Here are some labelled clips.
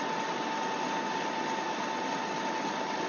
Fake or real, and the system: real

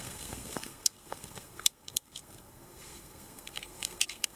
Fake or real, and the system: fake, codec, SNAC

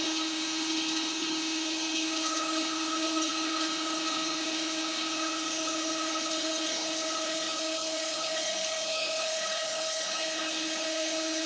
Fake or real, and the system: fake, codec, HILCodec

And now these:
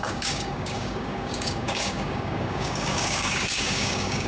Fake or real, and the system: fake, codec, DAC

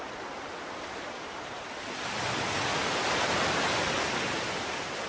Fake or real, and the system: real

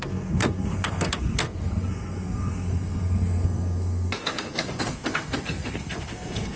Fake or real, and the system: fake, codec, SNAC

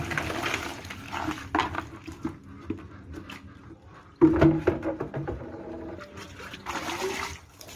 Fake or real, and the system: real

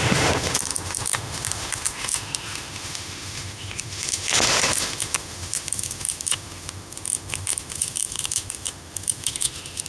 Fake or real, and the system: fake, autoencoder, DAC-VAE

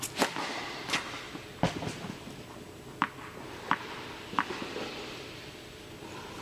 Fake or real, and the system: real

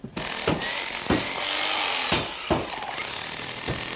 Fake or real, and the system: real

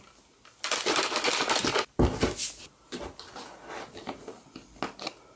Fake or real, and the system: real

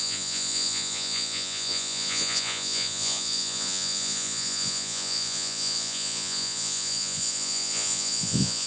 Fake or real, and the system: fake, vocoder, Vocos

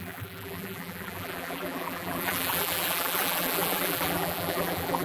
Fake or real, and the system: fake, vocoder, BigVGAN v2